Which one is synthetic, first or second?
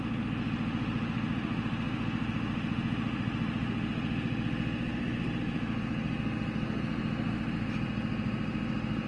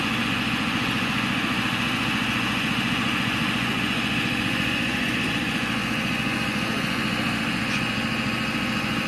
second